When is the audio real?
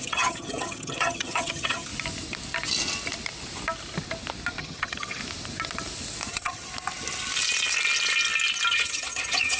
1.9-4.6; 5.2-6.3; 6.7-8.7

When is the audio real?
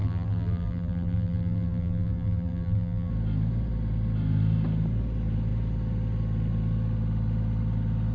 3.1-8.1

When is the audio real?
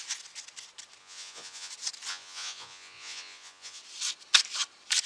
0.0-1.0; 1.7-2.1; 3.8-5.1